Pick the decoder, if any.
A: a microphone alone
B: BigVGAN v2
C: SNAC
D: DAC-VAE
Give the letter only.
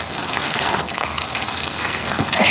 C